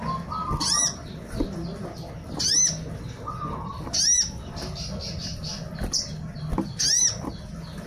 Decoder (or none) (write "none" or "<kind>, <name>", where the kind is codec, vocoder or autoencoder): none